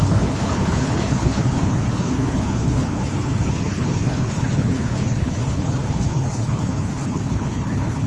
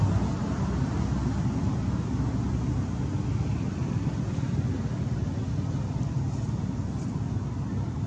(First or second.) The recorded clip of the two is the second